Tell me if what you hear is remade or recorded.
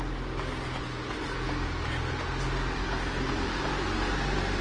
recorded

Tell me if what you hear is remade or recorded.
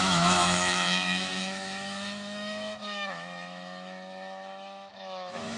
remade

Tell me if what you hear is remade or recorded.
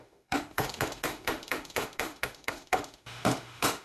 remade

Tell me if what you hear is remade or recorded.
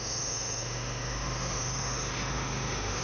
remade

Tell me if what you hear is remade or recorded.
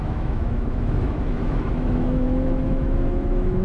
remade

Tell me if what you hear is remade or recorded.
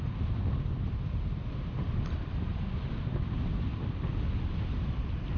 recorded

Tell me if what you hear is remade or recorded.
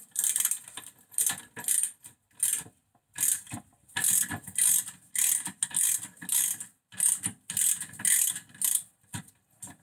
recorded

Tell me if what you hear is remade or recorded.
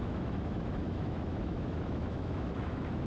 remade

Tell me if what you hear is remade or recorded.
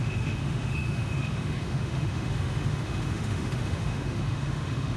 remade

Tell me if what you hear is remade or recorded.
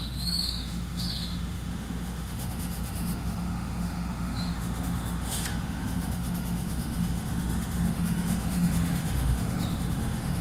remade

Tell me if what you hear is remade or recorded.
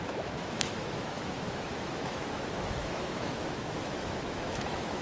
remade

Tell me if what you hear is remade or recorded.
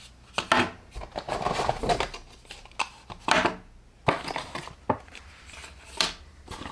recorded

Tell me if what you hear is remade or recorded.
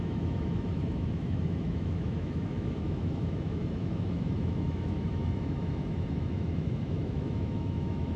remade